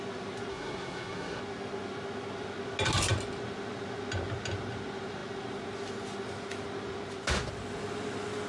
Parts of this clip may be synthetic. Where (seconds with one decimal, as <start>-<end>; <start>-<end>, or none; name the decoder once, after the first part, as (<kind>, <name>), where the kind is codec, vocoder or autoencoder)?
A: 0.5-1.4 (codec, SNAC)